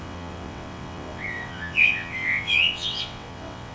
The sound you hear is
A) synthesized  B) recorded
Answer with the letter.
A